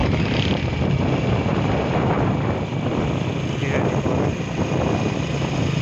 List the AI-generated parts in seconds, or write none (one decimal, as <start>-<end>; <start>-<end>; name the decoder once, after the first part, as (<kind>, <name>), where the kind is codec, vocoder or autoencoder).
none